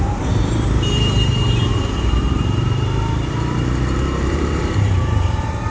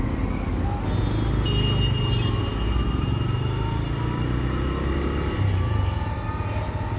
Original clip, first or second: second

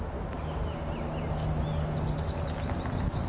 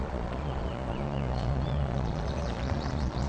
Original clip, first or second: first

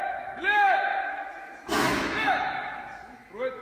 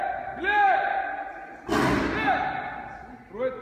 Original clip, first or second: second